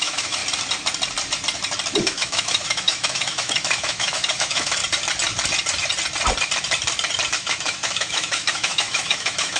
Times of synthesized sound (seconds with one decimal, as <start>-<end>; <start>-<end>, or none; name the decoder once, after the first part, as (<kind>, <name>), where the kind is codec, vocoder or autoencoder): 0.0-0.4 (autoencoder, DAC-VAE); 2.0-4.8; 7.3-9.6